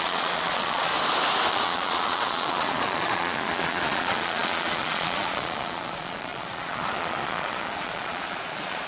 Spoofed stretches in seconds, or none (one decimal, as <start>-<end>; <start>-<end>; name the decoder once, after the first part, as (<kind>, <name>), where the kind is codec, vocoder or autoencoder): 0.0-0.9 (vocoder, Vocos); 1.5-8.9